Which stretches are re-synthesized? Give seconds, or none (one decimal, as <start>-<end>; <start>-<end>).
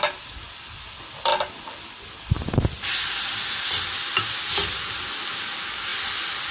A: none